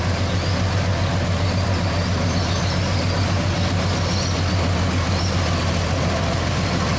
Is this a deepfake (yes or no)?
no